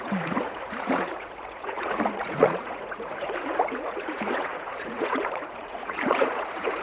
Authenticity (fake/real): fake